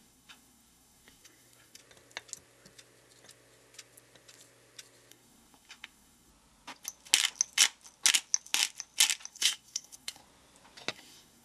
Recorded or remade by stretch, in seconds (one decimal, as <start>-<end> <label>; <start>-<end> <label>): 0.0-1.8 remade; 1.8-5.1 recorded; 5.1-6.3 remade; 6.3-9.3 recorded; 9.3-10.2 remade; 10.2-10.9 recorded; 10.9-11.4 remade

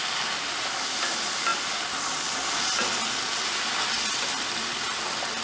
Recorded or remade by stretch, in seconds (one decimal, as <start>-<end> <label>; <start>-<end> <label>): 0.0-5.4 recorded

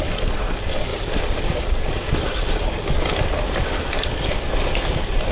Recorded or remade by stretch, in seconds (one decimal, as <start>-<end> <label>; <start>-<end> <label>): 0.0-0.9 recorded; 0.9-2.7 remade; 2.7-5.3 recorded